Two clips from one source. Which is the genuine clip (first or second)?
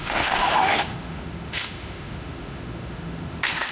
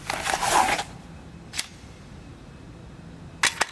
second